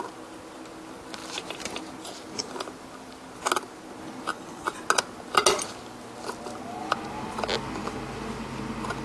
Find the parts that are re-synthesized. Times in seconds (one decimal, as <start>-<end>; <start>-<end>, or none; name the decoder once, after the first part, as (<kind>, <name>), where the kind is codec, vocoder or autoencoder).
4.3-4.8 (vocoder, Vocos)